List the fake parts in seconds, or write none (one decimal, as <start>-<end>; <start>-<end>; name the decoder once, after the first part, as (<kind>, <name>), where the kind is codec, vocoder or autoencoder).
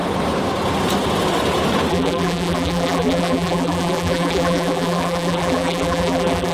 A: 1.9-6.5 (vocoder, BigVGAN v2)